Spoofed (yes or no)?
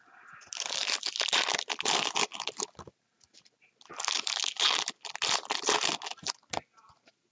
no